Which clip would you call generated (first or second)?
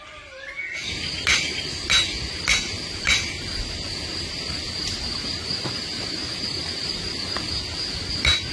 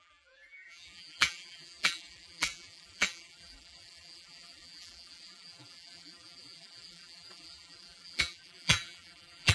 second